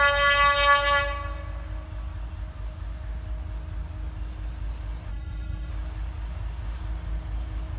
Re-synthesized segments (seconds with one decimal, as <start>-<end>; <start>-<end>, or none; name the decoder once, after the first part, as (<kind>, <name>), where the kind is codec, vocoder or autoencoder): 5.1-5.7 (codec, HILCodec)